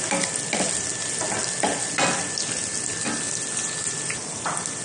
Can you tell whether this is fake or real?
real